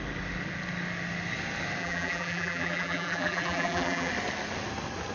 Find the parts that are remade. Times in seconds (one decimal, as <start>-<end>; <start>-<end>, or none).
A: 1.8-4.1